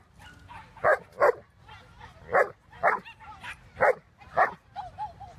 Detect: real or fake real